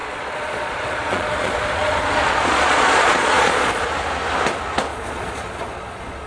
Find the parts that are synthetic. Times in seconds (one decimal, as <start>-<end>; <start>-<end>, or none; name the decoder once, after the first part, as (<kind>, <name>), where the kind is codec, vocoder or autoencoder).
0.0-3.8 (vocoder, Vocos); 4.9-6.3